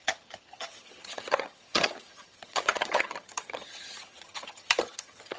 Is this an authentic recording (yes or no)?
no